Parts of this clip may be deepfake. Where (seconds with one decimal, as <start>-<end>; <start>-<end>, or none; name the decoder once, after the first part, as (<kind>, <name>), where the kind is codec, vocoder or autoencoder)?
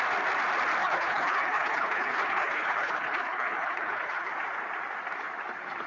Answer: 0.8-4.3 (codec, HILCodec)